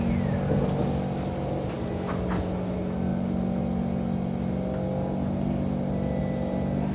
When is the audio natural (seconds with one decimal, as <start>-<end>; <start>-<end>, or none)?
0.0-6.9